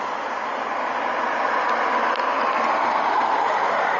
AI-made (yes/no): no